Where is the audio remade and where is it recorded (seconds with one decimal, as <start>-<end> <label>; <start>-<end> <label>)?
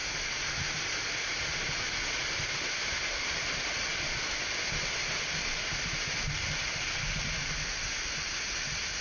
0.0-9.0 recorded